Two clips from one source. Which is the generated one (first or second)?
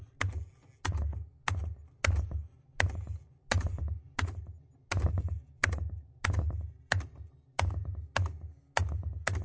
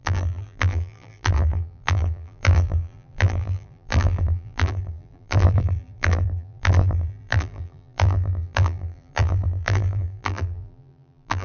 second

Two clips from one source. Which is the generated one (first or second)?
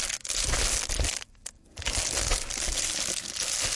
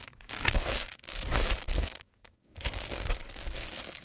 second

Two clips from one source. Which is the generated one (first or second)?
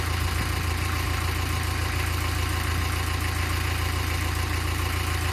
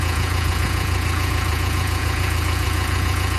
second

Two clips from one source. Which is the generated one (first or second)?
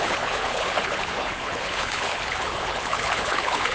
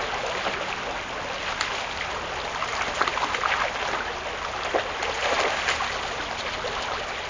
first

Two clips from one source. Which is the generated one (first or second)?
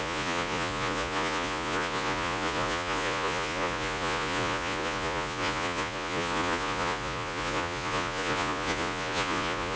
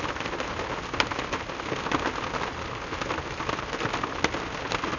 first